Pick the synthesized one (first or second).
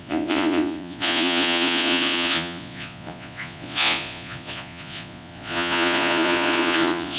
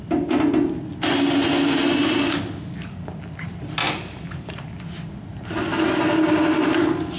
first